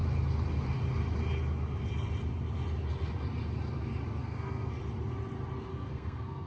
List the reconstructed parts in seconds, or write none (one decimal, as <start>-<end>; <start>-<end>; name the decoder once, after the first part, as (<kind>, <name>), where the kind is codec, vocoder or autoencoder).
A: 4.2-4.7 (codec, SNAC); 5.7-6.5